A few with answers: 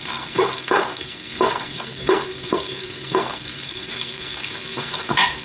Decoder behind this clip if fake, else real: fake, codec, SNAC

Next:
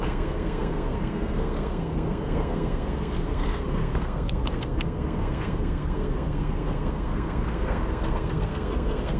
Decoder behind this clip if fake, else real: fake, codec, SNAC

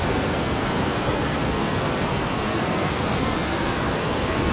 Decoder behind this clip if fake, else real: fake, codec, SNAC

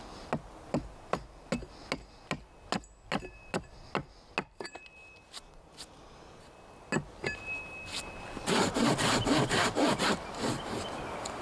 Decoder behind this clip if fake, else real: real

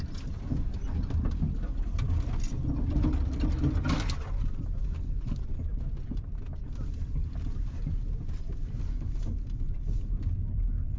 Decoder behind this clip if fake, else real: real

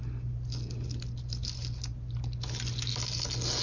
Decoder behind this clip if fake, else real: real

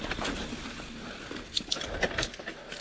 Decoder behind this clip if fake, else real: real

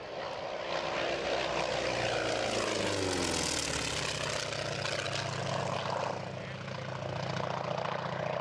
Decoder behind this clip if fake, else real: real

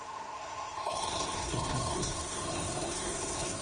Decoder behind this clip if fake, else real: fake, codec, SNAC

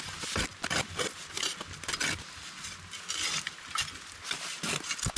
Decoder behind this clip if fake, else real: real